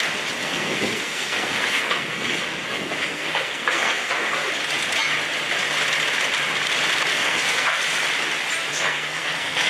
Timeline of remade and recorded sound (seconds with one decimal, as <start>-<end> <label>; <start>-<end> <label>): 0.0-0.4 recorded; 0.4-4.5 remade; 4.5-7.1 recorded; 7.1-7.8 remade; 7.8-8.7 recorded; 8.7-9.7 remade